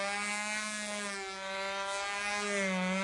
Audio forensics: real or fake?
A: real